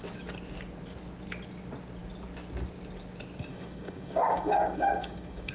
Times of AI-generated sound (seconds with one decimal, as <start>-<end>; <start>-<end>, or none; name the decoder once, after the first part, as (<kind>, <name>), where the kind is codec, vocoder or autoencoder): 3.5-5.5 (codec, DAC)